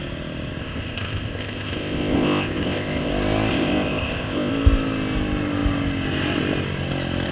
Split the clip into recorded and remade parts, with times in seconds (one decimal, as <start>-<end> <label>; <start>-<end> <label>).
0.0-0.6 recorded; 0.6-3.1 remade; 3.1-3.5 recorded; 3.5-4.5 remade; 4.5-7.3 recorded